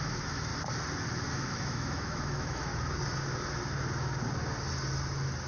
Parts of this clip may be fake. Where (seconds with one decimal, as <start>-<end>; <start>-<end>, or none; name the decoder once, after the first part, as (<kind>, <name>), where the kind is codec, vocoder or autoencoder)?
0.0-0.5 (autoencoder, DAC-VAE); 1.3-2.7